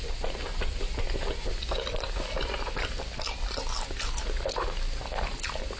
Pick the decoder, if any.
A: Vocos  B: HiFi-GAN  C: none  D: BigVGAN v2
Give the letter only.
C